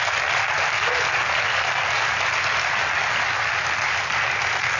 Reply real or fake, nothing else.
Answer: real